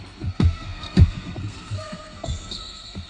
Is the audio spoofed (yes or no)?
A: yes